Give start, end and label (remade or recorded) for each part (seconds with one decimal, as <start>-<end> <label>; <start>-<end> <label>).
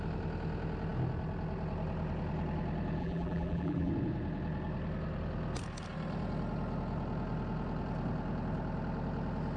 0.0-3.0 recorded; 3.0-3.9 remade; 3.9-9.6 recorded